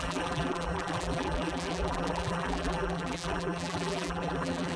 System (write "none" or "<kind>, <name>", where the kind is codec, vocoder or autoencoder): vocoder, BigVGAN v2